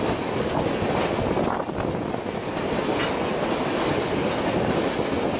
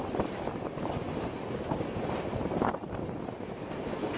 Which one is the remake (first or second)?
second